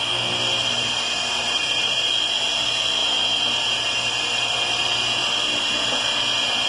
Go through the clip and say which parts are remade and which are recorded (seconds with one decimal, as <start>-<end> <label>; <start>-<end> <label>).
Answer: 0.0-1.4 recorded; 1.4-2.1 remade; 2.1-6.7 recorded